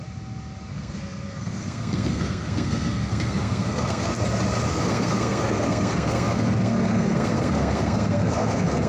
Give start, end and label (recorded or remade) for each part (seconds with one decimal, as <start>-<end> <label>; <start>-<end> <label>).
0.0-0.7 recorded; 0.7-4.1 remade; 4.1-4.7 recorded; 4.7-8.9 remade